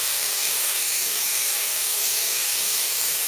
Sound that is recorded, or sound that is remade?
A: remade